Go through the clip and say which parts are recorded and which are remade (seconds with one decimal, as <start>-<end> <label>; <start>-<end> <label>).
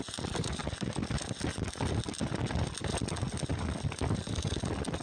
0.0-5.0 recorded